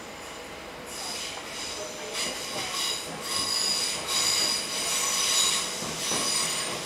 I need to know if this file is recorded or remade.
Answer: recorded